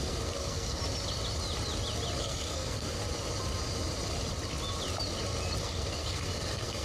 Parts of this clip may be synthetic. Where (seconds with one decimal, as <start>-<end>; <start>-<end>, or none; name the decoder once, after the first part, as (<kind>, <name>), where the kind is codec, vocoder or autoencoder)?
0.0-0.8 (codec, SNAC); 2.2-3.0; 5.6-6.8